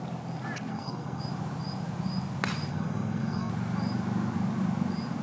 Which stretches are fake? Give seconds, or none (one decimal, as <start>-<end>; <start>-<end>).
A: 0.7-1.2; 2.7-3.5